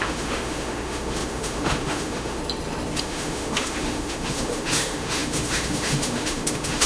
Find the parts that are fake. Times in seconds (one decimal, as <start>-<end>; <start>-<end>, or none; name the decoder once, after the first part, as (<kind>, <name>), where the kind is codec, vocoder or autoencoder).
0.0-2.4 (autoencoder, DAC-VAE); 3.0-6.9